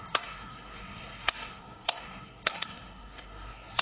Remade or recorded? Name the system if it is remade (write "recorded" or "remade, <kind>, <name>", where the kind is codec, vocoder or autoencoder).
remade, codec, SNAC